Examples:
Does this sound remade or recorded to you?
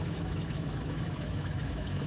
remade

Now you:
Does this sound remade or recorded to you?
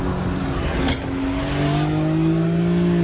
recorded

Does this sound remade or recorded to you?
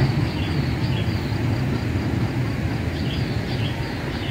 recorded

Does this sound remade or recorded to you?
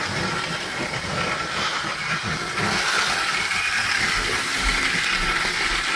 recorded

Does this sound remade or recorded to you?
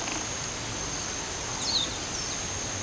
recorded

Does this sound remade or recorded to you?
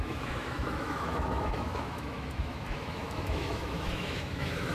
remade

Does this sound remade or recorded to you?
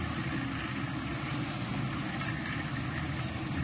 recorded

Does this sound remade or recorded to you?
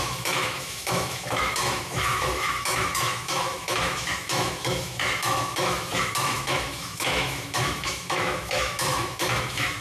remade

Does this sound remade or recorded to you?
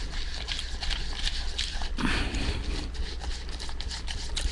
recorded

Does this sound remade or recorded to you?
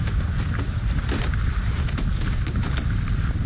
recorded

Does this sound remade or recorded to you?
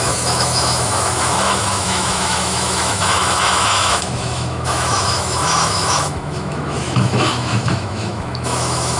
remade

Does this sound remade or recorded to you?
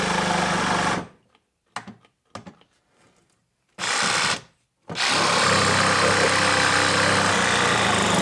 recorded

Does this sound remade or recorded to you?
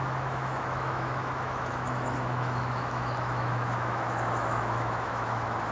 remade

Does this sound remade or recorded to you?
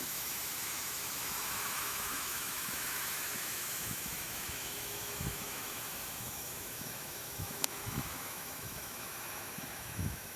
remade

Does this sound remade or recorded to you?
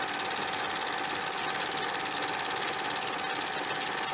recorded